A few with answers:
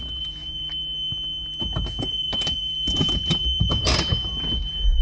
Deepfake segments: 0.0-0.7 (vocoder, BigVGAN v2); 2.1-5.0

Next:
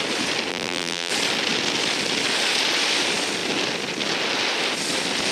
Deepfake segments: 0.5-1.1 (vocoder, BigVGAN v2)

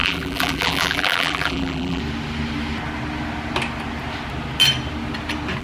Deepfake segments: 0.0-2.0 (vocoder, BigVGAN v2)

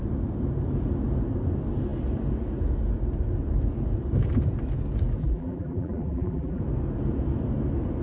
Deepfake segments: 5.2-6.6 (vocoder, BigVGAN v2)

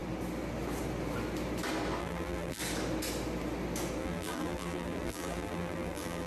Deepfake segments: 2.0-2.6 (vocoder, BigVGAN v2); 4.0-6.3

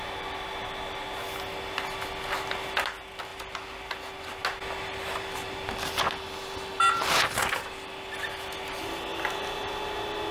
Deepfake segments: none